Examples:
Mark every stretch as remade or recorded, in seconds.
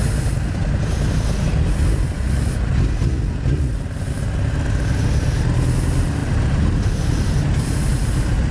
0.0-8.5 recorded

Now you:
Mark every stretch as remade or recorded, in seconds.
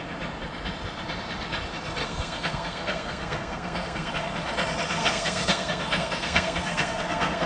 0.0-2.0 recorded; 2.0-4.1 remade; 4.1-5.0 recorded; 5.0-7.5 remade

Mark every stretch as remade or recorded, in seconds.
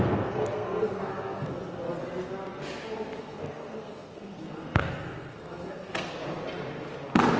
0.0-2.0 remade; 2.0-3.2 recorded; 3.2-6.2 remade; 6.2-7.4 recorded